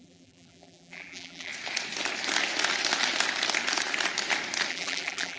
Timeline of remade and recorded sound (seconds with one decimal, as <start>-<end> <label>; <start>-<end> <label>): 0.0-1.5 remade; 1.5-4.7 recorded; 4.7-5.4 remade